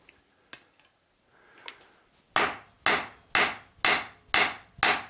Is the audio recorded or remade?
recorded